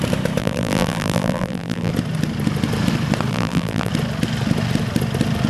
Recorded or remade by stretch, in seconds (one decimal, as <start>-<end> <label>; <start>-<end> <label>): 0.0-0.4 recorded; 0.4-1.9 remade; 1.9-3.3 recorded; 3.3-3.9 remade; 3.9-5.5 recorded